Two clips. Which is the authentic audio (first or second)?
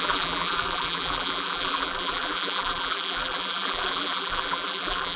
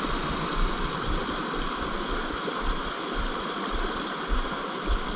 second